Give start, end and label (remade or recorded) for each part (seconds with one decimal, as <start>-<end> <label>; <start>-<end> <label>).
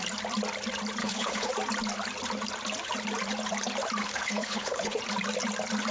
0.0-1.0 recorded; 1.0-1.5 remade; 1.5-4.0 recorded; 4.0-5.0 remade; 5.0-5.9 recorded